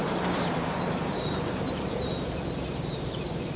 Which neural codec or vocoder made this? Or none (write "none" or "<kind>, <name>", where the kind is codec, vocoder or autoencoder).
vocoder, BigVGAN v2